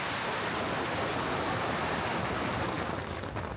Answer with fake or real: real